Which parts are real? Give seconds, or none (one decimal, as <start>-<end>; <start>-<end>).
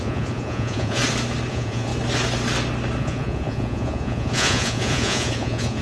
1.0-1.5; 1.9-3.0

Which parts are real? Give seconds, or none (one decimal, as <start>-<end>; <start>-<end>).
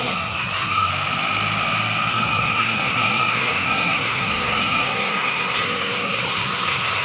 0.9-2.1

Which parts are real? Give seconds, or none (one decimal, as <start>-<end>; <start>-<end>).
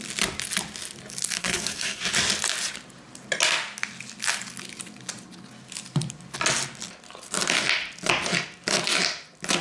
0.0-1.4; 2.0-9.6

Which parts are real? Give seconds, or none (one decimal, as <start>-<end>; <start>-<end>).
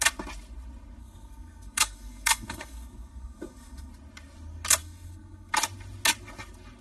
0.0-1.0; 3.9-4.8; 5.5-6.8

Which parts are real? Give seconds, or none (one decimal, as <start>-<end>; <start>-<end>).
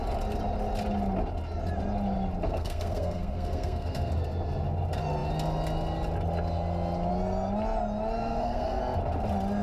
0.0-2.5; 4.1-8.2; 8.8-9.6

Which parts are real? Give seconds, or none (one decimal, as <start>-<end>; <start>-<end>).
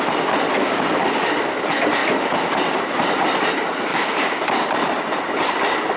0.0-0.6; 1.3-3.9; 4.4-6.0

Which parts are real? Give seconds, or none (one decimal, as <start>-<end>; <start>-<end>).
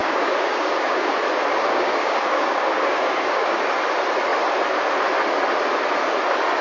1.1-1.5; 3.6-6.6